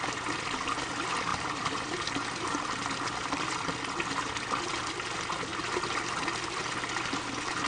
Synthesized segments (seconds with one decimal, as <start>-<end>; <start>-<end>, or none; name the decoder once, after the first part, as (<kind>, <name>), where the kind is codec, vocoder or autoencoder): 1.3-3.8 (vocoder, BigVGAN v2)